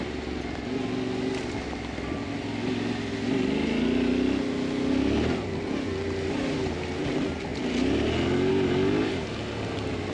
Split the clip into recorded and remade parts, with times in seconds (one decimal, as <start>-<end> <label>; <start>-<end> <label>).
0.0-10.1 recorded